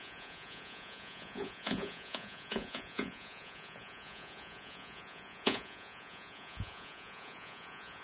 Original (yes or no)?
no